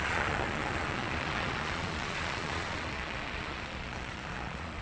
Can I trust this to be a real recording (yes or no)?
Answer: no